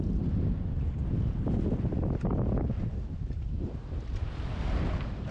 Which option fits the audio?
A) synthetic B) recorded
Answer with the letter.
B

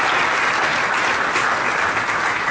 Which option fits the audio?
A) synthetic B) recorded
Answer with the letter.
B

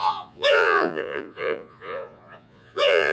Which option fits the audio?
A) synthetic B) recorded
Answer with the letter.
A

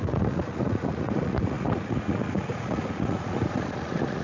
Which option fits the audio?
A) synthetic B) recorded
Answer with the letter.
A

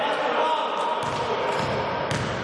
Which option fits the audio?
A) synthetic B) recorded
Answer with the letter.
B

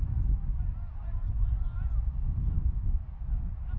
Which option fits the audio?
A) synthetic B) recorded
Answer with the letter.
B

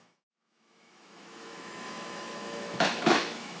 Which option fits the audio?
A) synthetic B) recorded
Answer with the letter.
A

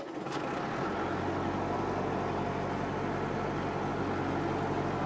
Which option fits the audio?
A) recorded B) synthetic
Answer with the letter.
A